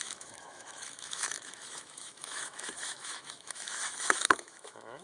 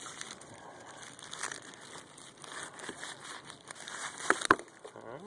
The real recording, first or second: second